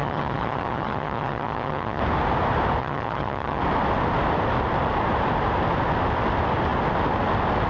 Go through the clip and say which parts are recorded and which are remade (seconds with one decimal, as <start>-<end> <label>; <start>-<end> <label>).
0.0-2.0 remade; 2.0-2.8 recorded; 2.8-3.6 remade; 3.6-7.7 recorded